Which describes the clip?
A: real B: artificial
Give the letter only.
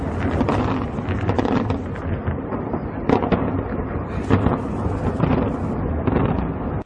A